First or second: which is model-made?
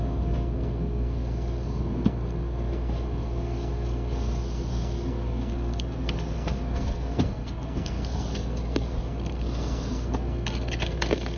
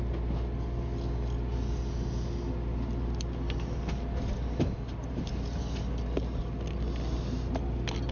first